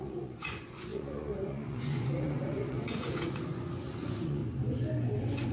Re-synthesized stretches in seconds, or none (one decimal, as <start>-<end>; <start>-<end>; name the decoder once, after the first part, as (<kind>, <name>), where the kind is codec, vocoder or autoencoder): 0.0-4.4 (vocoder, Vocos)